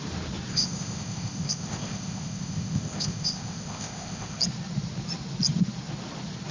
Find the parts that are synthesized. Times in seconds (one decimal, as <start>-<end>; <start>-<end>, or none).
0.5-4.4